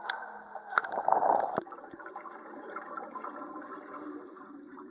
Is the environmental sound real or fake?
fake